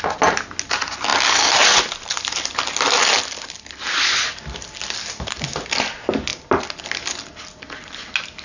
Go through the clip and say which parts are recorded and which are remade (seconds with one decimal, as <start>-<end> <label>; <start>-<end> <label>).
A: 0.0-8.4 recorded